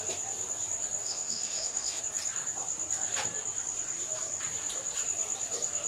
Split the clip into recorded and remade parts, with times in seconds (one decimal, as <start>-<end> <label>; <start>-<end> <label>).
0.0-1.0 recorded; 1.0-2.0 remade; 2.0-5.9 recorded

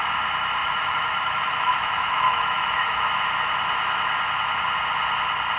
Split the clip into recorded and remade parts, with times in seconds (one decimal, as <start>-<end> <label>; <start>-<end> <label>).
0.0-0.6 recorded; 0.6-3.0 remade; 3.0-5.6 recorded